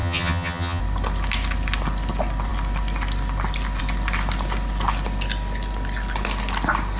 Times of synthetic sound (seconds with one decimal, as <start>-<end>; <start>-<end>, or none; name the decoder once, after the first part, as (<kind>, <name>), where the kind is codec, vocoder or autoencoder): 0.0-0.8 (vocoder, HiFi-GAN)